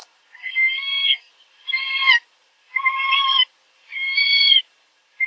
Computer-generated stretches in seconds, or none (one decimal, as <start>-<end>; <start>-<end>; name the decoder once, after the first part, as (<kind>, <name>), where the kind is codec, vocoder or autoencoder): 0.4-1.3 (codec, SNAC)